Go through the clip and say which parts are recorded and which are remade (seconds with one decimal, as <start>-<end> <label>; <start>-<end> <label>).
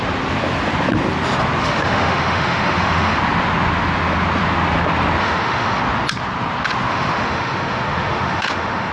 0.0-1.6 recorded; 1.6-3.2 remade; 3.2-5.2 recorded; 5.2-5.8 remade; 5.8-6.9 recorded; 6.9-8.9 remade